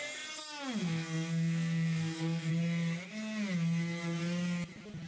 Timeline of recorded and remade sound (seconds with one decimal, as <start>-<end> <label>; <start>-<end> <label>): 0.0-0.8 recorded; 0.8-2.5 remade; 2.5-5.1 recorded